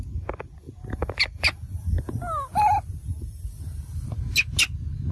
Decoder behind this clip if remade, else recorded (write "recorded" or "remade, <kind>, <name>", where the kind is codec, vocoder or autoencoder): recorded